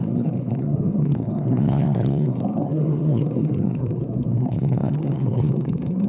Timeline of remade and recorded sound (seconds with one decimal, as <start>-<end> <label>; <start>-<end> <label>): 0.0-6.1 remade